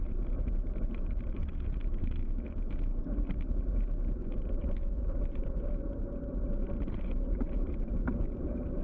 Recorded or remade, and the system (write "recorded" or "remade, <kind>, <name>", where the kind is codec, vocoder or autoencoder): remade, vocoder, BigVGAN v2